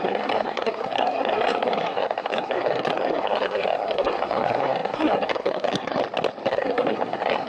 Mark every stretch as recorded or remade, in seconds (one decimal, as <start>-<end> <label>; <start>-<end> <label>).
0.0-6.0 remade; 6.0-6.5 recorded; 6.5-7.5 remade

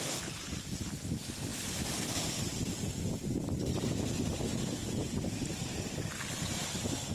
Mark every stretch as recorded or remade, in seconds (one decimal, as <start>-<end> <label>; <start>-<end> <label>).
0.0-7.1 recorded

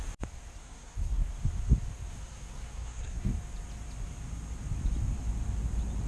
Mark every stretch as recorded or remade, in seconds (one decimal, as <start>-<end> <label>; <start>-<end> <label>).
0.0-0.6 recorded; 0.6-1.3 remade; 1.3-2.1 recorded; 2.1-3.3 remade; 3.3-6.1 recorded